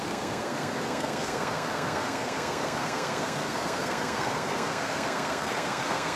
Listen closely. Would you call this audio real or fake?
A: fake